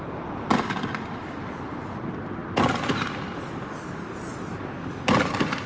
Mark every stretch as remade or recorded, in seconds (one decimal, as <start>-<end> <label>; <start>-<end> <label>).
0.0-5.7 recorded